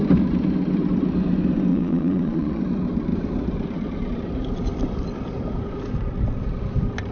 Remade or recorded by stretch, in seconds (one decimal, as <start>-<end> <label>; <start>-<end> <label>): 0.0-1.7 recorded; 1.7-2.6 remade; 2.6-7.1 recorded